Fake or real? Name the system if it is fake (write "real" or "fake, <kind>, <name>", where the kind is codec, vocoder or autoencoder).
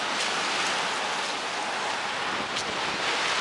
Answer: real